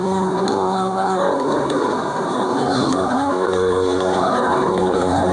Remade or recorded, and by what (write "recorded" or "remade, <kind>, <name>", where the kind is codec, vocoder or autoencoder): remade, codec, SNAC